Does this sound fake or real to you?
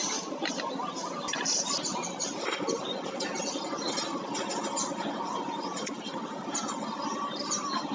real